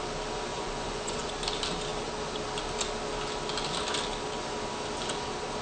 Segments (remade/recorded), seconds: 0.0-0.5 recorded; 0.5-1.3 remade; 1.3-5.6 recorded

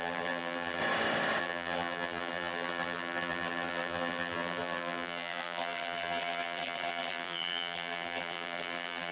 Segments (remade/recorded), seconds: 0.0-0.8 remade; 0.8-1.4 recorded; 1.4-9.1 remade

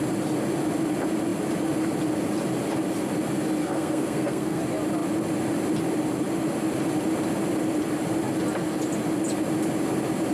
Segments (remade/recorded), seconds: 0.0-3.6 recorded; 3.6-4.6 remade; 4.6-10.3 recorded

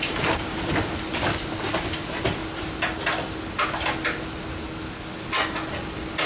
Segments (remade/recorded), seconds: 0.0-0.9 remade; 0.9-1.7 recorded; 1.7-2.4 remade; 2.4-6.3 recorded

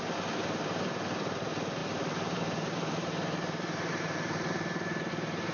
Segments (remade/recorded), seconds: 0.0-1.8 recorded; 1.8-5.1 remade; 5.1-5.5 recorded

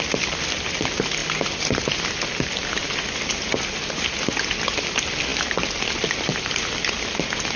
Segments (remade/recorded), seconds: 0.0-7.6 recorded

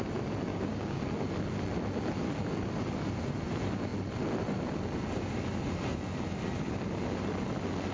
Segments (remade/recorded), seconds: 0.0-0.5 recorded; 0.5-1.0 remade; 1.0-7.9 recorded

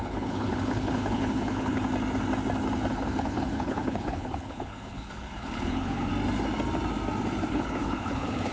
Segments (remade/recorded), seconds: 0.0-1.8 remade; 1.8-2.9 recorded; 2.9-6.1 remade; 6.1-7.5 recorded; 7.5-8.5 remade